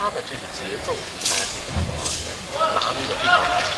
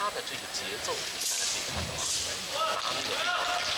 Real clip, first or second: second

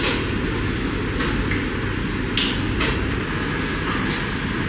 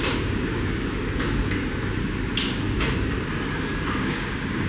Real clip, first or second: first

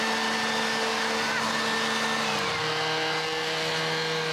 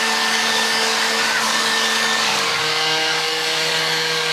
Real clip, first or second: first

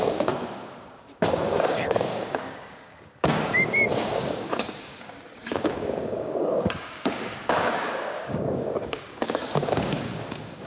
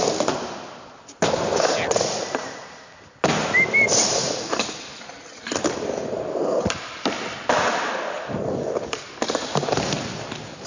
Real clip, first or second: second